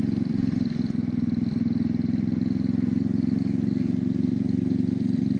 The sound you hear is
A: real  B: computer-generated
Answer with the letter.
A